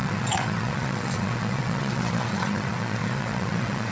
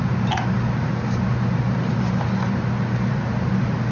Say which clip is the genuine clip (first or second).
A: second